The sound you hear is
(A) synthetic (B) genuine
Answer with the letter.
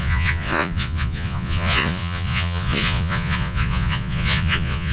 A